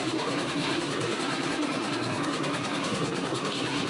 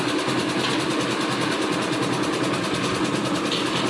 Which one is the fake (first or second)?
first